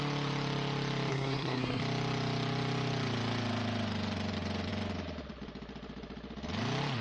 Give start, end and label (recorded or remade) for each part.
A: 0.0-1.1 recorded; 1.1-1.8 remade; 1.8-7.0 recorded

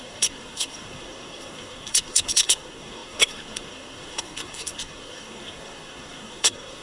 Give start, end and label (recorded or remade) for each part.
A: 0.0-6.8 remade

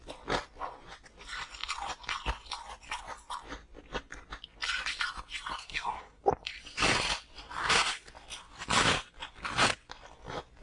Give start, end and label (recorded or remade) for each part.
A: 0.0-5.6 recorded; 5.6-6.2 remade; 6.2-7.6 recorded; 7.6-8.1 remade; 8.1-10.6 recorded

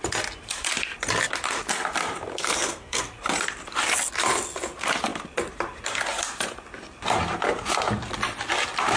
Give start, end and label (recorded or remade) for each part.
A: 0.0-2.3 recorded; 2.3-3.0 remade; 3.0-9.0 recorded

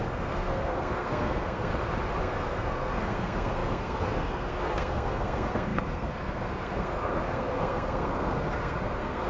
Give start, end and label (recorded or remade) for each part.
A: 0.0-1.7 remade; 1.7-2.2 recorded; 2.2-9.3 remade

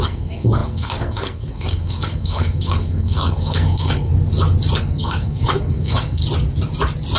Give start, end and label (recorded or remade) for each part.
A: 0.0-4.1 remade; 4.1-4.8 recorded; 4.8-6.2 remade; 6.2-7.2 recorded

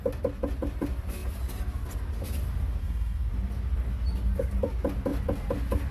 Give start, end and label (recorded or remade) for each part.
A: 0.0-2.8 recorded; 2.8-3.3 remade; 3.3-5.9 recorded